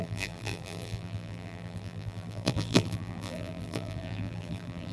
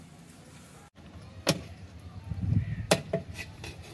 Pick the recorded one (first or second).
second